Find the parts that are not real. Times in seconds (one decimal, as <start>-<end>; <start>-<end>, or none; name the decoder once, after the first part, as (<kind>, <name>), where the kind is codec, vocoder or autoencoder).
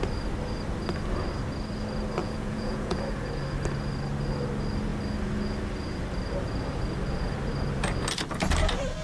2.2-3.0 (vocoder, Vocos)